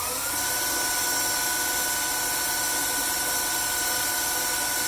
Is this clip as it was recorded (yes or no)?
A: yes